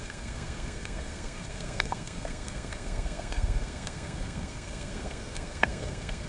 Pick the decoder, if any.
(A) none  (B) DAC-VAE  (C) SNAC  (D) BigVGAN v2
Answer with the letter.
C